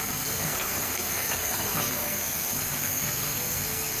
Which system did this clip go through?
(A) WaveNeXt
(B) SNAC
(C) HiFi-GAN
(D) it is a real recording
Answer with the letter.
B